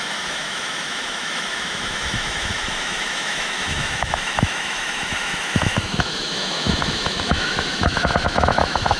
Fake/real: fake